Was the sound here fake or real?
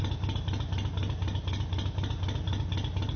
real